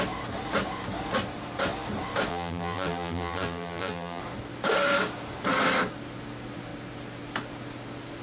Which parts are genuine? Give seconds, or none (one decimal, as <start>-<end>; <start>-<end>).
0.0-2.3; 4.2-8.2